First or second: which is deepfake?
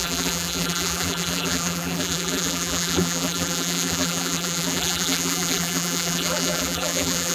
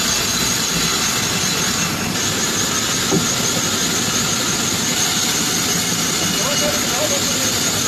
first